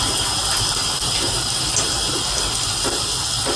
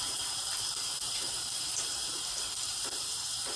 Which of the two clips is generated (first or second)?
second